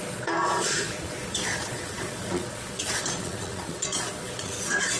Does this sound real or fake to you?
fake